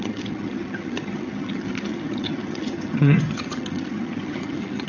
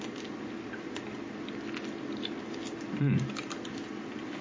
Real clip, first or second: second